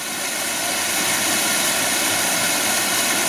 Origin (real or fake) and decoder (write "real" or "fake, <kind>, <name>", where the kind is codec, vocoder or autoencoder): real